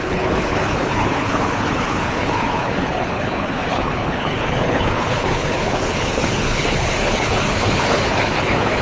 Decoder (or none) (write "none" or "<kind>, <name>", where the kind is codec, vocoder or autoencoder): codec, HILCodec